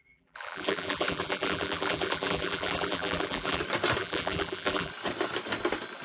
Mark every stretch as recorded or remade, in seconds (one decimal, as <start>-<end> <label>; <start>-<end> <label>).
0.0-3.6 remade; 3.6-4.0 recorded; 4.0-4.9 remade; 4.9-6.0 recorded